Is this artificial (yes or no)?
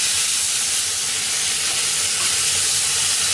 no